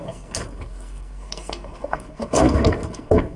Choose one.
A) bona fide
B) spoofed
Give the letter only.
B